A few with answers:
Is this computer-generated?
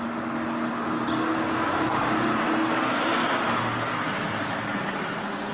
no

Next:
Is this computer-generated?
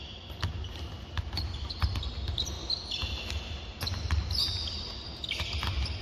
no